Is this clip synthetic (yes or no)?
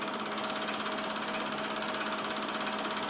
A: no